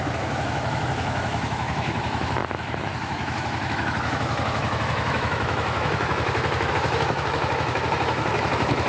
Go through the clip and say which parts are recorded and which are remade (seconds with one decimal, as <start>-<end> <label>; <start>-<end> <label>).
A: 0.0-8.9 remade